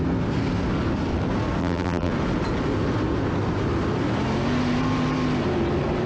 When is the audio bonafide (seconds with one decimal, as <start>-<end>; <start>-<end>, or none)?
0.0-1.6; 2.1-6.1